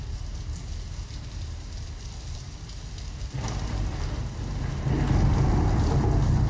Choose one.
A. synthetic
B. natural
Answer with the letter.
B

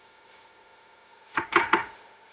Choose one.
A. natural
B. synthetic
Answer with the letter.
B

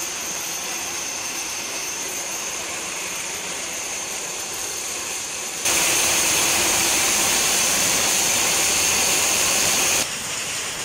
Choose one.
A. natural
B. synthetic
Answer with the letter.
B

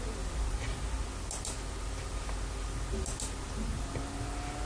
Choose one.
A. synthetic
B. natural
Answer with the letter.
B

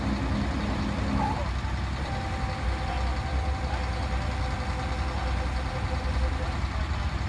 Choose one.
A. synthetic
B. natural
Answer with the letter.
B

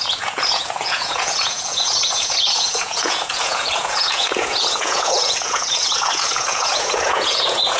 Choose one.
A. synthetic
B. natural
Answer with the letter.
A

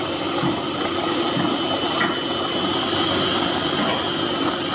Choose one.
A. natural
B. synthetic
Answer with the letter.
A